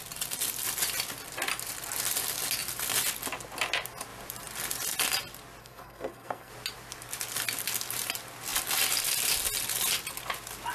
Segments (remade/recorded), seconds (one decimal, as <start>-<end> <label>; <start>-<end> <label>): 0.0-5.6 recorded; 5.6-6.5 remade; 6.5-10.7 recorded